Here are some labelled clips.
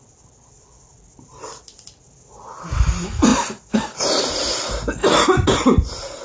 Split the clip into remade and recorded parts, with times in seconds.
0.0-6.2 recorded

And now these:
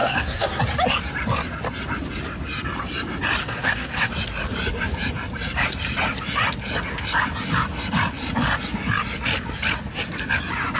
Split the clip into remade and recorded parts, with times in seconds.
0.0-0.6 remade; 0.6-3.4 recorded; 3.4-4.1 remade; 4.1-10.8 recorded

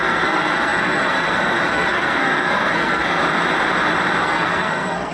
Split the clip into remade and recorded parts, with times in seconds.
0.0-3.2 remade; 3.2-4.2 recorded; 4.2-5.1 remade

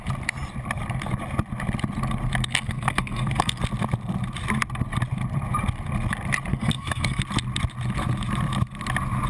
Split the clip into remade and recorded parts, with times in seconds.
0.0-2.4 recorded; 2.4-3.6 remade; 3.6-6.5 recorded; 6.5-7.2 remade; 7.2-9.3 recorded